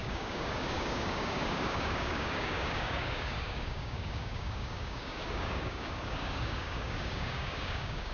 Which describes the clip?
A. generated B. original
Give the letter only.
A